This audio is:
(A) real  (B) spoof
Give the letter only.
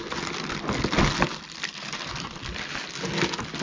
B